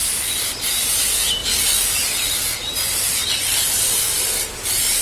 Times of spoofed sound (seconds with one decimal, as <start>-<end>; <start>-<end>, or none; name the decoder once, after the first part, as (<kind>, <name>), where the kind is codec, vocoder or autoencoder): none